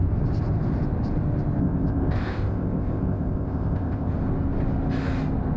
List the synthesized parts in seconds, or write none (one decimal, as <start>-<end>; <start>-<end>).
1.6-4.1